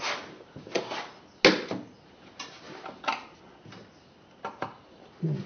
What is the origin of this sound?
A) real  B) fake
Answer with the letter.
A